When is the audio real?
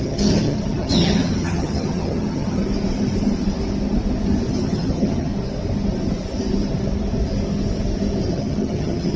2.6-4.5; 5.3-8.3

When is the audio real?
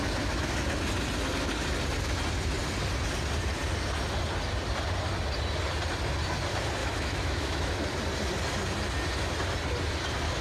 0.0-6.8; 7.7-10.4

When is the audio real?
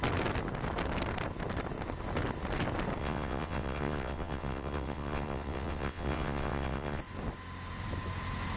0.0-3.0; 7.0-8.6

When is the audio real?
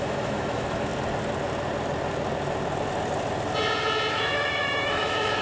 0.9-4.1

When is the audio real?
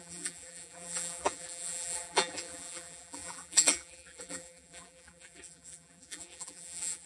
none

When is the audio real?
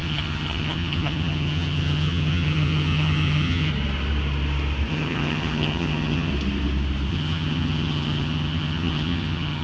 3.7-4.9; 6.3-7.1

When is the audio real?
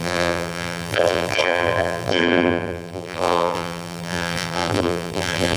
none